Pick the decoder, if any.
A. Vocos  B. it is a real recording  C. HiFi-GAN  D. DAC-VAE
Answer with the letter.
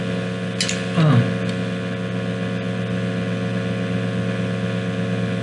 B